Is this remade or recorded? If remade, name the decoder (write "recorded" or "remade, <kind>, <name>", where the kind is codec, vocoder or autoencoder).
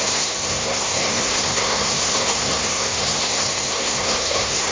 remade, codec, SNAC